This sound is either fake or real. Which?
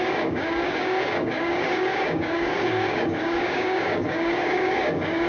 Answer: fake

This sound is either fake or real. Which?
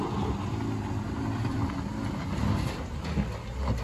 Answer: real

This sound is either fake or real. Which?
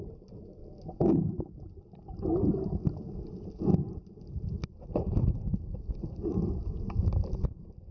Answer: real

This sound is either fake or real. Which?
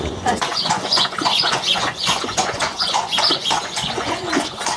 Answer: fake